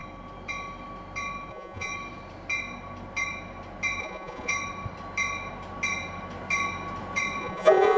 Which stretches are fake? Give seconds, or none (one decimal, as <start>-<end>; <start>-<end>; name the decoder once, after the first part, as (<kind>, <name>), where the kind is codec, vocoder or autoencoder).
1.5-1.9 (vocoder, Vocos); 4.0-4.5; 7.4-8.0